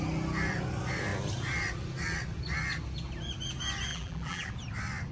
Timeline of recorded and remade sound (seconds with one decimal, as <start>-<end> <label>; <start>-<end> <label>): 0.0-3.9 recorded; 3.9-4.5 remade; 4.5-5.1 recorded